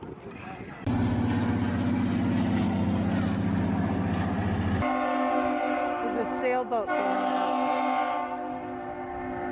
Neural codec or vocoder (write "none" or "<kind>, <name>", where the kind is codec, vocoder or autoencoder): none